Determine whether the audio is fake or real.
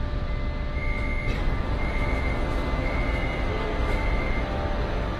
real